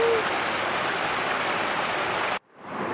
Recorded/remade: recorded